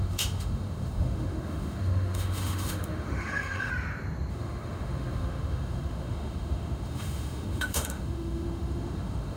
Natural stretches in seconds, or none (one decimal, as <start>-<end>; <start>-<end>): 3.7-4.3